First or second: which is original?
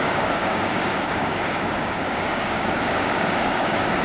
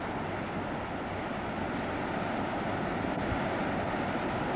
second